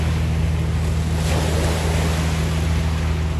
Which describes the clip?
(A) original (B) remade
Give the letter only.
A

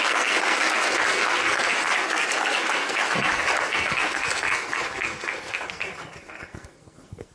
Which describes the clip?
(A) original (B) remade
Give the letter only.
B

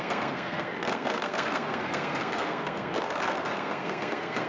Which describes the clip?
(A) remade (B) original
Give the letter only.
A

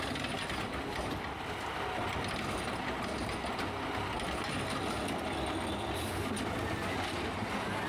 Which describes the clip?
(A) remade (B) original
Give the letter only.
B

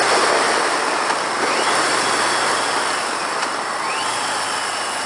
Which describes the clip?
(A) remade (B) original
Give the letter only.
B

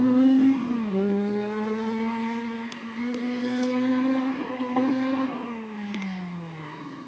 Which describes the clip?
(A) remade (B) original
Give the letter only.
A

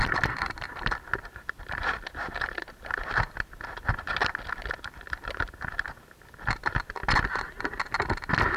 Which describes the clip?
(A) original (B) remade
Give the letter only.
A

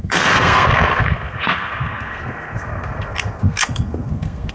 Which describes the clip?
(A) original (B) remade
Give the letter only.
B